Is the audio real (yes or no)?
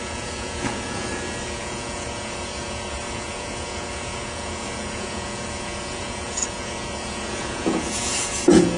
no